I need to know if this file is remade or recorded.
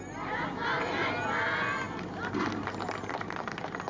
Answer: recorded